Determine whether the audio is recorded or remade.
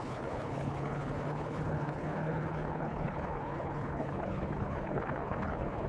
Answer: remade